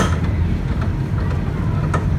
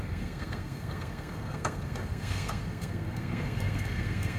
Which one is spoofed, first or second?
second